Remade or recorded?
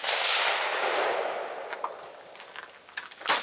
recorded